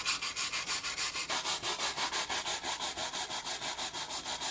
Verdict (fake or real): real